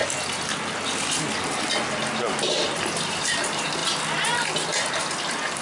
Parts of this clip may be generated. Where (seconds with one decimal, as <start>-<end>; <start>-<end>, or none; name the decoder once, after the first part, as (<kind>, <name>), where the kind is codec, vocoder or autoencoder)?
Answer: none

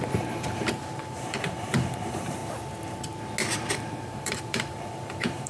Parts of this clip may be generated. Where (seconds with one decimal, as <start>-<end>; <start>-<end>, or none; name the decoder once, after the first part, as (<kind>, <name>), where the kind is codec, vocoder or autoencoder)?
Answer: 0.0-2.4 (vocoder, BigVGAN v2); 3.7-5.5

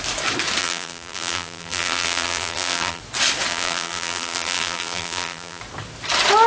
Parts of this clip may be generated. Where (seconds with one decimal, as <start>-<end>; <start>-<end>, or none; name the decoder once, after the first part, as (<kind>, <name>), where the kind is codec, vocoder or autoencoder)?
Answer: 0.6-3.0 (vocoder, BigVGAN v2); 3.5-5.6

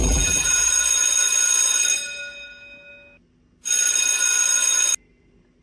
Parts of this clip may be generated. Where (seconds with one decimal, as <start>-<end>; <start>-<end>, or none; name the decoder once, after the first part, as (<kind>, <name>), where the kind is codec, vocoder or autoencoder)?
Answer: 0.0-0.7 (vocoder, BigVGAN v2)

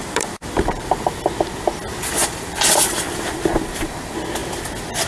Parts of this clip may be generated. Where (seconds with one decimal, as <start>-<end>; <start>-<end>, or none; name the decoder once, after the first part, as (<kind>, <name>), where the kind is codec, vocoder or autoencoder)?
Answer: 0.0-0.9 (vocoder, BigVGAN v2); 2.2-3.4

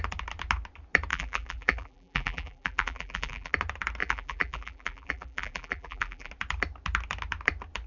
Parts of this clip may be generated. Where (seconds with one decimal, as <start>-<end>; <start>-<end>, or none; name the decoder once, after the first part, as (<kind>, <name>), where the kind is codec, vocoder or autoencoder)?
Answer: 1.1-3.5 (vocoder, BigVGAN v2); 4.0-6.3

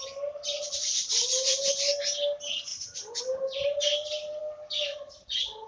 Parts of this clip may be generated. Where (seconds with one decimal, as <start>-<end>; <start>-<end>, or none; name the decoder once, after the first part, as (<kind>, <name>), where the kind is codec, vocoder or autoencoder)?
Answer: 0.8-1.7 (vocoder, BigVGAN v2); 2.7-3.2; 3.6-4.4

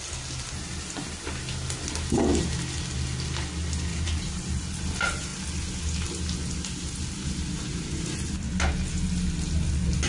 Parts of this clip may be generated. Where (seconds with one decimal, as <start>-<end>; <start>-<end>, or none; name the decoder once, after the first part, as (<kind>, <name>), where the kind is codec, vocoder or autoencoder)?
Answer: 3.9-4.6 (vocoder, BigVGAN v2)